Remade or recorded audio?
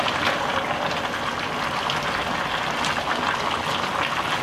recorded